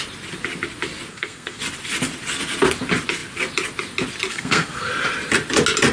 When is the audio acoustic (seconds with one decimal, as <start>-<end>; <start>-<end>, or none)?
0.0-1.1; 1.6-4.3; 4.9-5.9